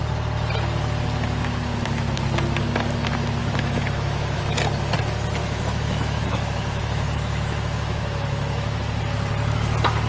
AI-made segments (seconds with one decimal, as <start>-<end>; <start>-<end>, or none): 3.4-4.4; 5.4-8.8

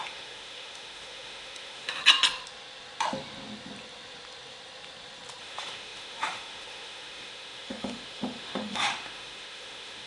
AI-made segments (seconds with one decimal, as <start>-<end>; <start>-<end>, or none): 0.0-2.0; 5.4-10.1